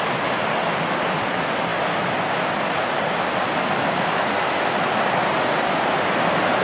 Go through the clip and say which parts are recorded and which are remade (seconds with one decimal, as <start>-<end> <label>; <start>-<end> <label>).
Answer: 0.0-6.6 recorded